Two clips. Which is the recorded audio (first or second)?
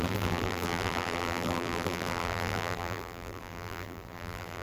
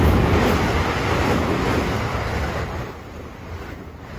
second